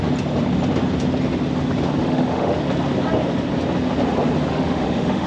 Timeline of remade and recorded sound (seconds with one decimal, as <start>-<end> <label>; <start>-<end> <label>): 0.0-2.0 recorded; 2.0-2.6 remade; 2.6-4.5 recorded; 4.5-5.3 remade